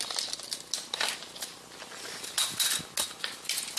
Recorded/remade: recorded